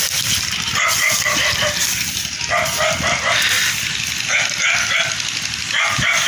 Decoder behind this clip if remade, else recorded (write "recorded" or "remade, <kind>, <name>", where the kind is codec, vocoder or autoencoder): recorded